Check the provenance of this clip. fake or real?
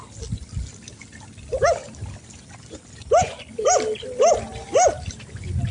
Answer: real